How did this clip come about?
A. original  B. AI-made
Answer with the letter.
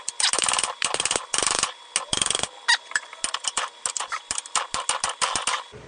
A